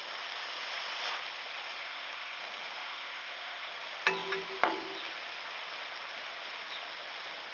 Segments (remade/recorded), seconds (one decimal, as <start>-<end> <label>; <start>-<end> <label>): 0.0-1.8 recorded; 1.8-2.4 remade; 2.4-2.8 recorded; 2.8-3.7 remade; 3.7-7.5 recorded